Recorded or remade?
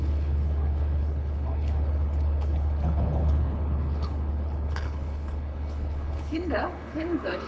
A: remade